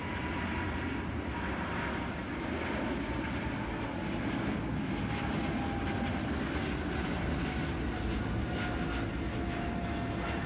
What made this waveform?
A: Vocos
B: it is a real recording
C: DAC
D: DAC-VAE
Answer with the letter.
B